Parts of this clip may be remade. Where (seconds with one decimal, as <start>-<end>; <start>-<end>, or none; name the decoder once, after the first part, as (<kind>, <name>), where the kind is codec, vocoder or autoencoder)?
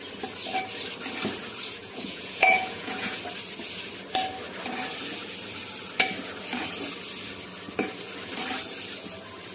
1.8-3.2 (vocoder, Vocos)